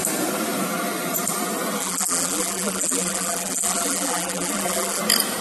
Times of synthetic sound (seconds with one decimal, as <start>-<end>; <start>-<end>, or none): 1.8-5.0